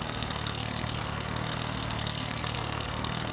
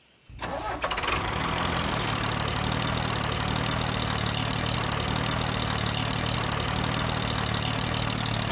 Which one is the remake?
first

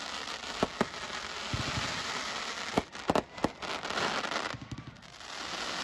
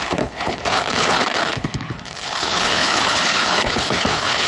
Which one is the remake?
second